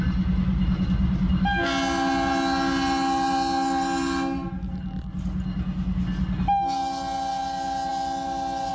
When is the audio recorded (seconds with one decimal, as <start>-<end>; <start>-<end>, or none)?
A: 0.0-8.7